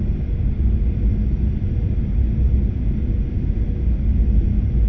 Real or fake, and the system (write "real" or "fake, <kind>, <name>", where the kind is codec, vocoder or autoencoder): real